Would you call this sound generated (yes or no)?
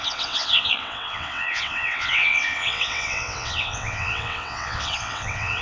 yes